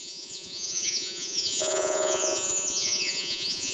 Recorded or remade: remade